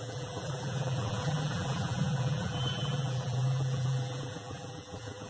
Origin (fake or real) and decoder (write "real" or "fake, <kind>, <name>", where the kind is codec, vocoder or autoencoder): fake, vocoder, BigVGAN v2